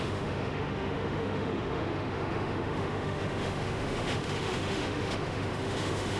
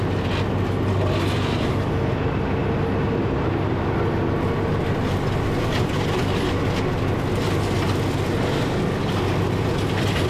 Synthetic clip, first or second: first